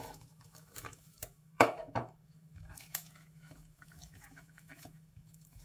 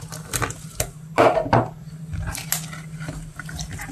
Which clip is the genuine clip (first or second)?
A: second